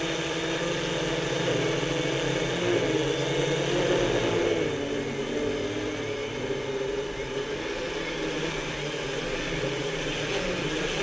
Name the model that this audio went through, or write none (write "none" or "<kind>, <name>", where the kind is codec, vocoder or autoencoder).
none